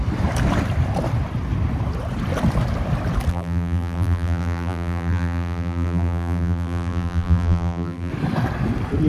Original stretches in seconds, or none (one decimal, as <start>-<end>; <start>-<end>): 0.0-3.3; 8.1-9.1